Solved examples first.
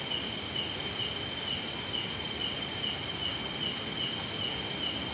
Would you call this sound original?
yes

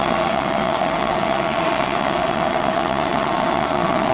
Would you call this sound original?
no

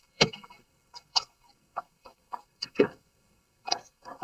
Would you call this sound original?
no